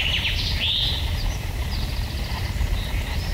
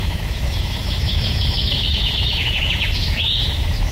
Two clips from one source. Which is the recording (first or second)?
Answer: first